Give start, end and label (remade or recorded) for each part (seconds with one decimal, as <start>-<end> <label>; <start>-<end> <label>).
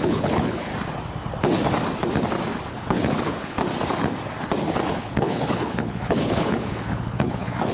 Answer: 0.0-0.7 remade; 0.7-2.7 recorded; 2.7-3.6 remade; 3.6-4.6 recorded; 4.6-7.7 remade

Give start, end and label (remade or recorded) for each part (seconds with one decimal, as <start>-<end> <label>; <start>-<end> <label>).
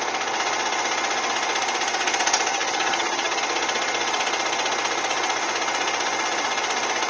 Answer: 0.0-2.5 recorded; 2.5-3.4 remade; 3.4-7.1 recorded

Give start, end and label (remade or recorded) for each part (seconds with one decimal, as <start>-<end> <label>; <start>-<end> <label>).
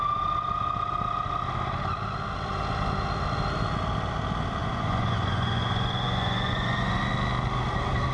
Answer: 0.0-4.6 recorded; 4.6-7.0 remade; 7.0-8.1 recorded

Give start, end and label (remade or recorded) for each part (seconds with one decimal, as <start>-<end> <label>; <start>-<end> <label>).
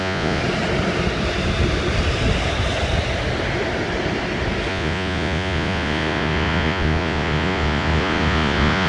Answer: 0.0-0.4 remade; 0.4-4.7 recorded; 4.7-8.9 remade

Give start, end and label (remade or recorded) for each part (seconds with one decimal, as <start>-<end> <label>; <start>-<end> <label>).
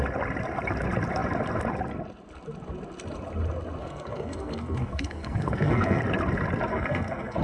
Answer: 0.0-3.8 recorded; 3.8-6.0 remade; 6.0-6.7 recorded; 6.7-7.4 remade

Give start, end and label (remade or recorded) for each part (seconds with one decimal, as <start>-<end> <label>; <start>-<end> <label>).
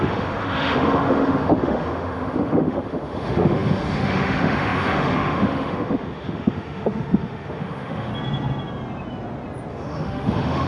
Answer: 0.0-8.1 remade; 8.1-9.7 recorded; 9.7-10.7 remade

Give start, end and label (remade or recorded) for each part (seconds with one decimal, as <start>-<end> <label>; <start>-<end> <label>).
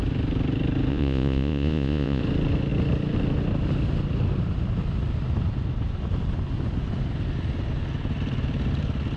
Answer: 0.0-0.9 recorded; 0.9-2.2 remade; 2.2-9.2 recorded